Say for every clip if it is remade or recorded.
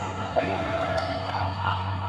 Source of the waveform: remade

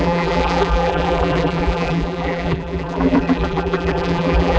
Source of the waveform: remade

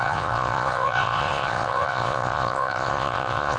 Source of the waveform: remade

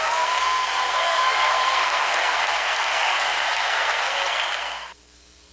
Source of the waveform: remade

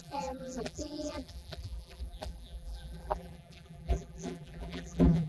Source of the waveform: remade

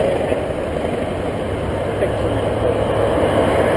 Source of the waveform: recorded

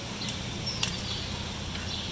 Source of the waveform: recorded